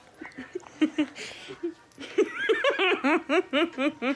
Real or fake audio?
real